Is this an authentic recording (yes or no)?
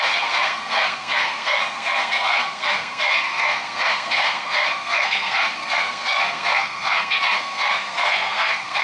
no